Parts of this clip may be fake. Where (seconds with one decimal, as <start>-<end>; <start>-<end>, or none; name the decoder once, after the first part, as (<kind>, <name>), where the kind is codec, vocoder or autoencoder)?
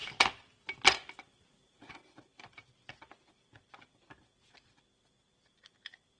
none